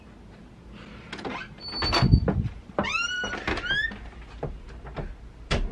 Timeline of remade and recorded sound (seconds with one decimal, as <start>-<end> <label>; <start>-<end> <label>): 0.0-5.7 recorded